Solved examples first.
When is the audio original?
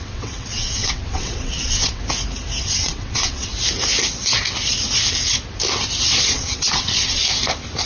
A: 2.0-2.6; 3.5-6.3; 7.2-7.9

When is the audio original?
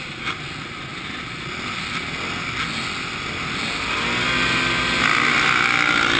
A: 0.0-6.2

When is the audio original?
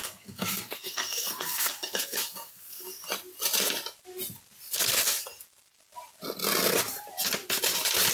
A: 2.9-8.1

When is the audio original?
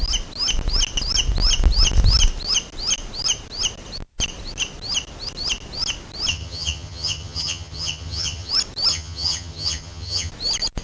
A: 0.0-6.3; 8.5-8.9; 10.3-10.8